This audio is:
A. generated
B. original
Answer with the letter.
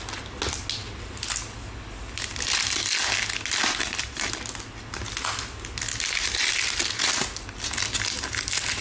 B